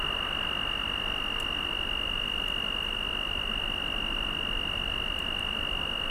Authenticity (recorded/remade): recorded